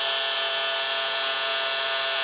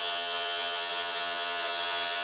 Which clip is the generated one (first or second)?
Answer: second